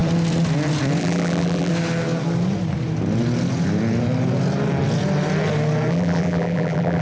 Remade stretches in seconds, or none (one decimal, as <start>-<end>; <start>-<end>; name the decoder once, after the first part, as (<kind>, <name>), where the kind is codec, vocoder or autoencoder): 1.0-1.7 (vocoder, BigVGAN v2); 5.9-7.0